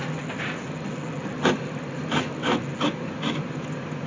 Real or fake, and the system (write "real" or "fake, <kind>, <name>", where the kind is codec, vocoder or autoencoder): real